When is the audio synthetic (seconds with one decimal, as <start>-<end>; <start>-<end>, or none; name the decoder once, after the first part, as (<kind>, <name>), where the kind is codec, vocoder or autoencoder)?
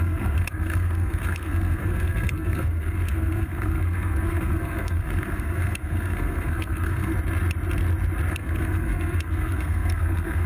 0.0-7.1 (codec, SNAC); 8.3-10.5